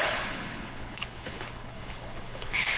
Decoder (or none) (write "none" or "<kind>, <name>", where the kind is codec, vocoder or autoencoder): codec, HILCodec